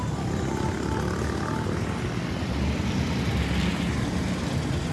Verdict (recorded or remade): recorded